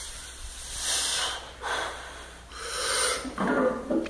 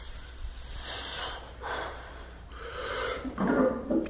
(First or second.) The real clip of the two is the first